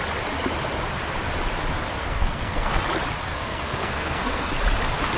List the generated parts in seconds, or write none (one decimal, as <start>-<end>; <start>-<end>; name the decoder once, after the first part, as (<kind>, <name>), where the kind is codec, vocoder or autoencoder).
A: 2.0-2.8 (codec, SNAC); 3.3-4.5